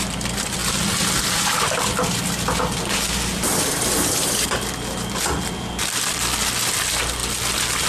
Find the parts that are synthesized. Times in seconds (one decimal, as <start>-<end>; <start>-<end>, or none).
none

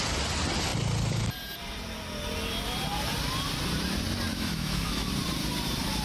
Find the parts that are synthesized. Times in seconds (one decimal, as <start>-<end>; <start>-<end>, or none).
4.3-5.1

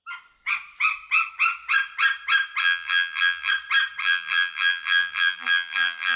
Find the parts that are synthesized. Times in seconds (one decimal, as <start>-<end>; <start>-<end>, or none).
2.6-3.5; 4.0-6.2

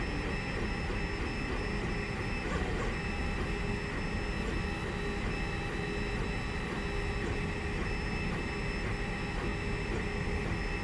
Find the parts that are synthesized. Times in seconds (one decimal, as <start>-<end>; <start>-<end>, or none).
none

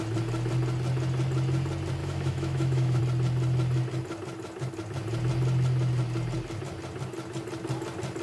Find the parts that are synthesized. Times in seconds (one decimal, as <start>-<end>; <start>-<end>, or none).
2.0-3.0

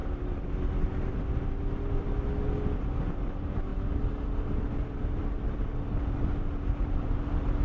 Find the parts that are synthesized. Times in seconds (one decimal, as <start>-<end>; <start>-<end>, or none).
none

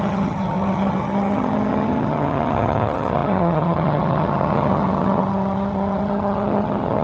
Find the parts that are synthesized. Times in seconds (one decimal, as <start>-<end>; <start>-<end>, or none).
0.0-7.0